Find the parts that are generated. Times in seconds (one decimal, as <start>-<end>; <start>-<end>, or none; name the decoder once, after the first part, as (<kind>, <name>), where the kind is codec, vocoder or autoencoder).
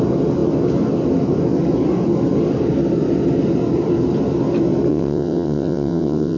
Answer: 4.9-6.4 (vocoder, WaveNeXt)